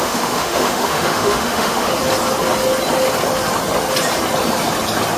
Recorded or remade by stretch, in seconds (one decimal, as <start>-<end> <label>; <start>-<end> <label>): 0.0-1.9 remade; 1.9-5.2 recorded